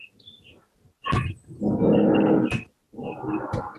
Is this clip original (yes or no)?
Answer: yes